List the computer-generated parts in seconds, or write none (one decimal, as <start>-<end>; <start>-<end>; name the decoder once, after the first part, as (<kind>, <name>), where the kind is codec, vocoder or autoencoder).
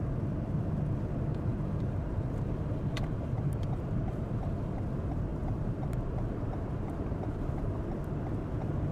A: 1.3-4.8 (vocoder, BigVGAN v2); 5.3-7.8